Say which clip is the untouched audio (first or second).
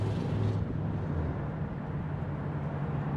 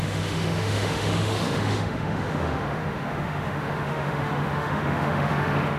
first